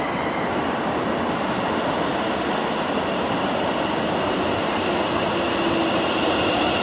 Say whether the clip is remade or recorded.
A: recorded